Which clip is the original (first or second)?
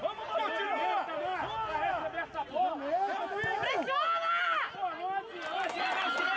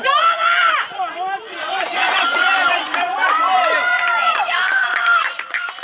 first